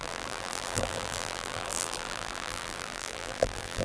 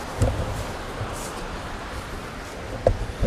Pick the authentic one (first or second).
second